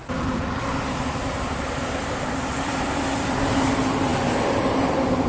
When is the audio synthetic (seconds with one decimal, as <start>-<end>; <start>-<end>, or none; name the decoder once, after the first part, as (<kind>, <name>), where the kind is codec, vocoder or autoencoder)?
0.0-5.3 (vocoder, BigVGAN v2)

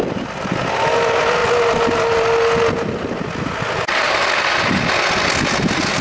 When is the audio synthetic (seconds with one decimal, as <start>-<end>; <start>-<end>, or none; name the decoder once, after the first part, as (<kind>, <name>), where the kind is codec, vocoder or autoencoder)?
none

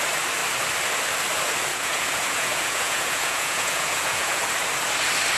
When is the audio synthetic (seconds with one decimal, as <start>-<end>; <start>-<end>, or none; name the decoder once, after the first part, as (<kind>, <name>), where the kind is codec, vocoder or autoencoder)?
1.7-4.4 (vocoder, Vocos)

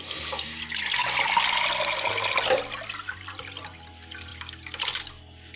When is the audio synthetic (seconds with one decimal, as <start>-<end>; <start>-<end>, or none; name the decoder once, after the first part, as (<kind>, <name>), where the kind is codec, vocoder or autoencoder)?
none